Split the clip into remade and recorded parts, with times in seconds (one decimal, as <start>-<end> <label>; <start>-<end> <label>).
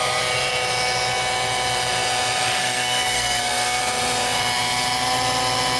0.0-2.6 recorded; 2.6-3.8 remade; 3.8-5.8 recorded